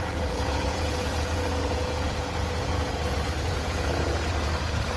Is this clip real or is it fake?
fake